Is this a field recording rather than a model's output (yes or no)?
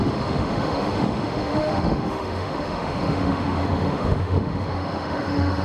no